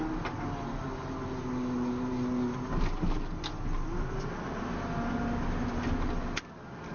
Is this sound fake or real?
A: real